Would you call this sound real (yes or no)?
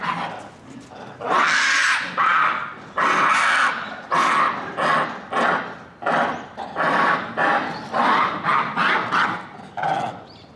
yes